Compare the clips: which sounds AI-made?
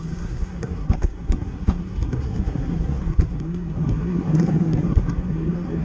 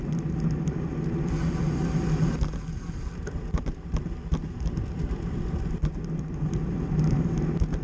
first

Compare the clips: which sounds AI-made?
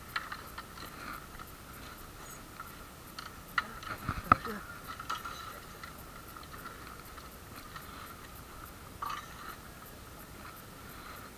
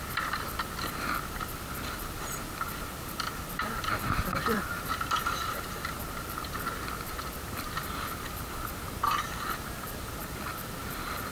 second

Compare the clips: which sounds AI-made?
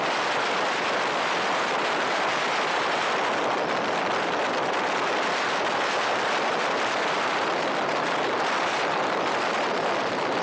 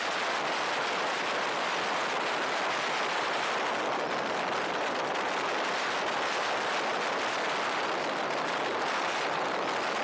first